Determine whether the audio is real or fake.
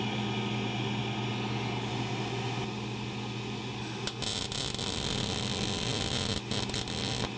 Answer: real